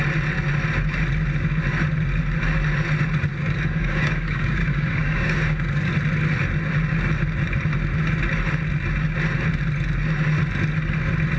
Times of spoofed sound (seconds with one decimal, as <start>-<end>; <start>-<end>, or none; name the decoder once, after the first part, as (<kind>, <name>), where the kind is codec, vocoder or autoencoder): 3.3-5.9 (codec, DAC)